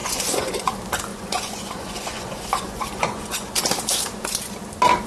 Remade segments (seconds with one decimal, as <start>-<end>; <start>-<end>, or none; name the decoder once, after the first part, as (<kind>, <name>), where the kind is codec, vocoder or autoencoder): 0.0-0.7 (vocoder, Vocos); 1.1-3.6